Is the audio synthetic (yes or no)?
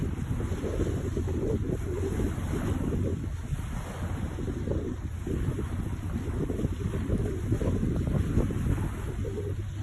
no